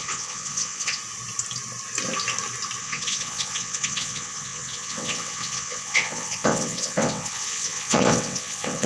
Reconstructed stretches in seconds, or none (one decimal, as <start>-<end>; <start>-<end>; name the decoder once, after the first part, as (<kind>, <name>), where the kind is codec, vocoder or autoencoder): 0.0-1.0 (vocoder, WaveNeXt); 2.8-8.9